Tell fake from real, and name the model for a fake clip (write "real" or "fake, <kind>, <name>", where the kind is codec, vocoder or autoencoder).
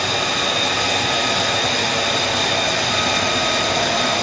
real